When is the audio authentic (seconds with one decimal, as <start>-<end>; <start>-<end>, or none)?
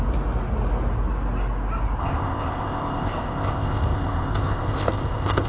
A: 0.0-2.0